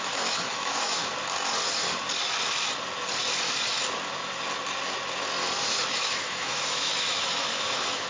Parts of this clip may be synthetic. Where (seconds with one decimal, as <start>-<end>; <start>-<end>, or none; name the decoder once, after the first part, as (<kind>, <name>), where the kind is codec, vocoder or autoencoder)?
0.0-1.0 (autoencoder, DAC-VAE); 5.9-8.1